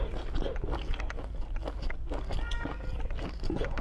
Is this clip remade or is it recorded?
recorded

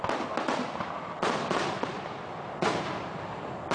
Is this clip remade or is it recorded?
recorded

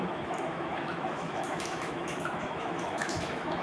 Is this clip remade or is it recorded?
remade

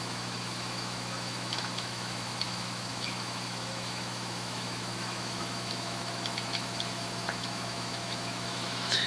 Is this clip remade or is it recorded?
remade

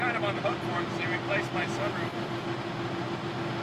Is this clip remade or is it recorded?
recorded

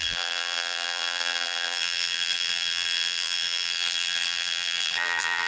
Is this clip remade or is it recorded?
remade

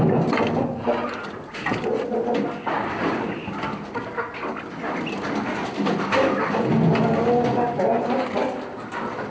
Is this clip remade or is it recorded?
recorded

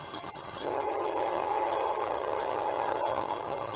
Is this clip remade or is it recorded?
remade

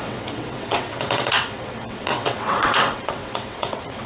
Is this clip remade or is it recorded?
remade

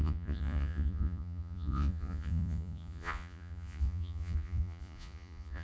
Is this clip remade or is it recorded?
remade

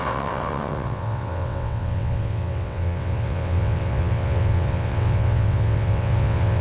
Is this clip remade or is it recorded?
remade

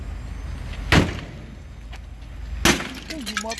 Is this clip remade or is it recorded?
recorded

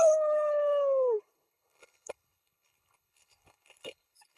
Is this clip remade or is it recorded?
remade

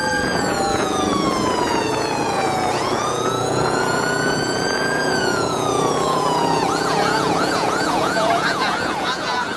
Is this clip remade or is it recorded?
remade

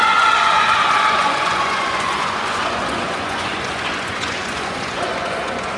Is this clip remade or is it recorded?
remade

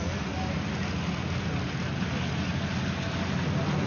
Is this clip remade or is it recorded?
recorded